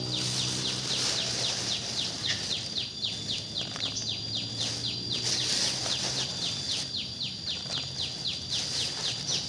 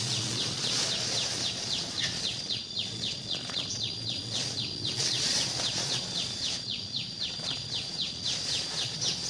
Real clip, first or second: first